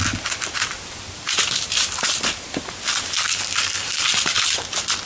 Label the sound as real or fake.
fake